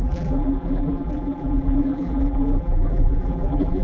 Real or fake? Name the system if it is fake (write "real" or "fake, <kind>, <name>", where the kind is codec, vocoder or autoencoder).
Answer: fake, vocoder, BigVGAN v2